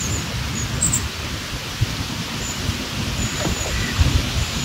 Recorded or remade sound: recorded